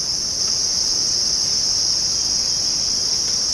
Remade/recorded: recorded